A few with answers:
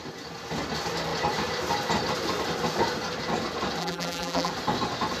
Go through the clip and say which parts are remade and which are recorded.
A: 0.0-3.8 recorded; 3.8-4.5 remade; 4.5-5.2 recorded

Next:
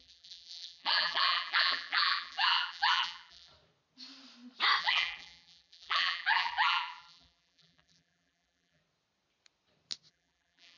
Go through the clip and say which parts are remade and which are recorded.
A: 0.0-3.5 remade; 3.5-4.8 recorded; 4.8-8.8 remade; 8.8-10.1 recorded; 10.1-10.8 remade